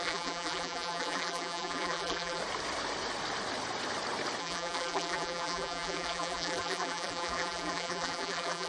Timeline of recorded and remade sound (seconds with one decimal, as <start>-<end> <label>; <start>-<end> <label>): 0.0-2.4 remade; 2.4-4.4 recorded; 4.4-8.7 remade